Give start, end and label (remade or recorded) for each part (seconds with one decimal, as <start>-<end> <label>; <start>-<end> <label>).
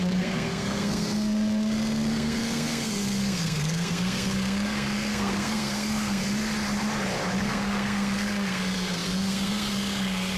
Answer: 0.0-6.2 remade; 6.2-7.4 recorded; 7.4-10.4 remade